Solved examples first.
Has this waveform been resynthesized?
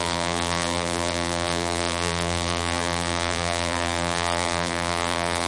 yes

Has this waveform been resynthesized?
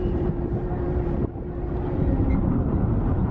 yes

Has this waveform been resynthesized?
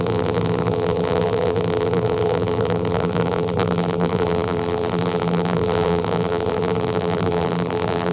yes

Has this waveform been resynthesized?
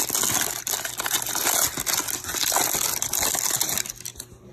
no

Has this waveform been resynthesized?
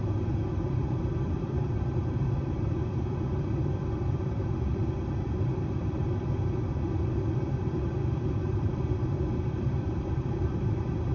yes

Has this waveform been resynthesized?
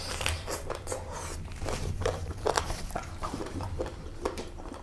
yes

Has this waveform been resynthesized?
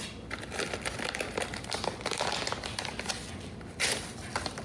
yes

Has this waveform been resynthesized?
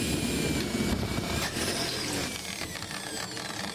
yes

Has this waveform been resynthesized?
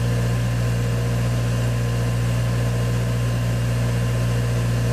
no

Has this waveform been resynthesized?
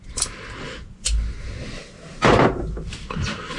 no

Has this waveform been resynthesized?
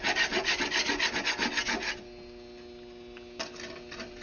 no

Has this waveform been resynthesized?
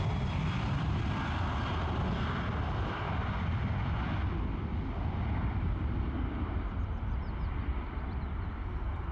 no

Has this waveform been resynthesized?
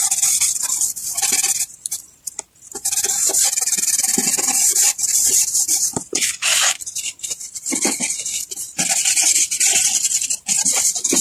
yes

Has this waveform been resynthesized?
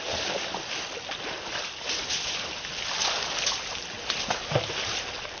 no